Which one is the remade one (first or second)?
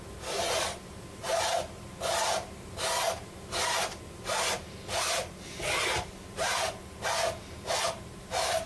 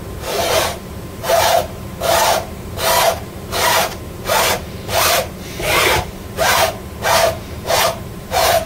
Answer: second